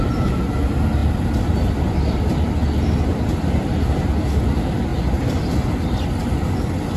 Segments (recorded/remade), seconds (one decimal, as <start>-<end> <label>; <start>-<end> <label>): 0.0-7.0 recorded